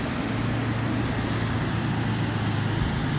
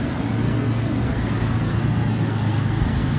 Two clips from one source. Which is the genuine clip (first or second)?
first